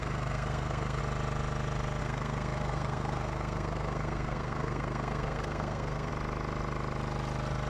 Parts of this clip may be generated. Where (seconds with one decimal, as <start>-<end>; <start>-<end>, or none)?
0.0-1.0; 2.0-6.1